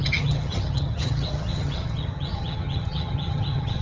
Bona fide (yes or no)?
no